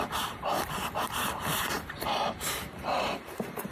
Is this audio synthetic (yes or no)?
yes